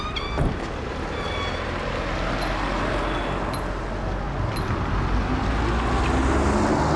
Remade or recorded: recorded